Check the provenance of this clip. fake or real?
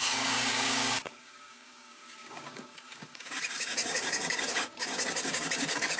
fake